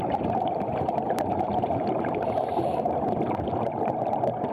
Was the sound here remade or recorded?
remade